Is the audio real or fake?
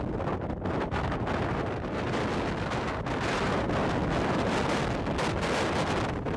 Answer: real